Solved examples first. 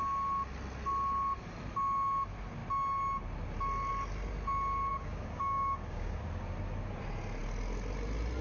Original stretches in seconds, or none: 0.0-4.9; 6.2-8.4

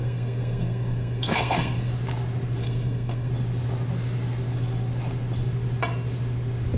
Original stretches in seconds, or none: 1.9-2.6; 3.3-6.8

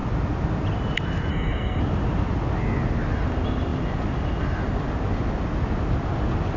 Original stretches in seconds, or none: 0.0-1.3; 1.8-6.6

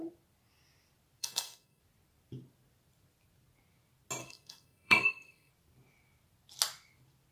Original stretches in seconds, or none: 0.0-1.2; 1.8-4.2; 5.5-7.3

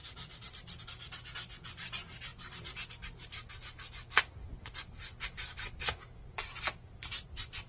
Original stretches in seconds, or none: 0.8-2.3; 3.5-7.7